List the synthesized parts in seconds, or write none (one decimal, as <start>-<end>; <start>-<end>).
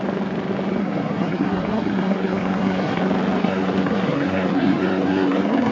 0.8-3.0; 3.4-5.7